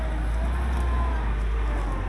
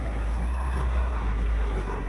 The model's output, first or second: second